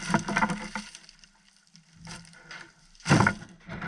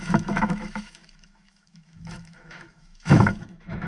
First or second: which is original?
first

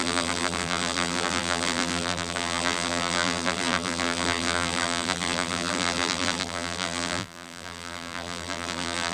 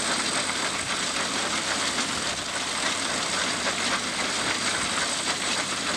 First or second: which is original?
second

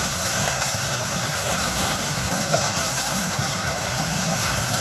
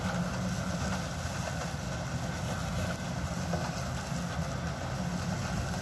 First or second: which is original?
second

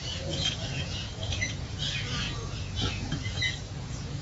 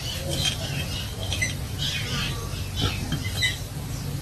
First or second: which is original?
second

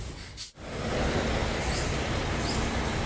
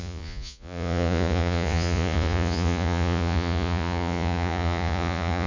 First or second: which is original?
first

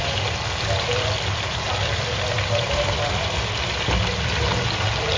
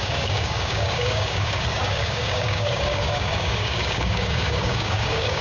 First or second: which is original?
first